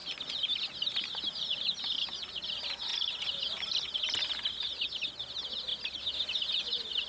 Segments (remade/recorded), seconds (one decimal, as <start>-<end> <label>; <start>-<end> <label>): 0.0-7.1 recorded